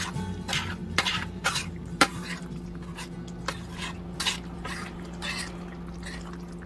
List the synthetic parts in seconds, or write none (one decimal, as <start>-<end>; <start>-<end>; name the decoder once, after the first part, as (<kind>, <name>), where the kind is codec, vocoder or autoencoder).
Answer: 0.8-2.5 (vocoder, BigVGAN v2)